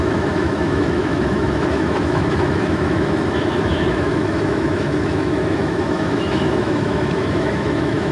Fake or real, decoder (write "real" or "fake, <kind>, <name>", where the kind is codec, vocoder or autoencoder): fake, autoencoder, DAC-VAE